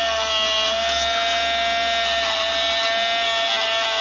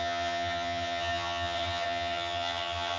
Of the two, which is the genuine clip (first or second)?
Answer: first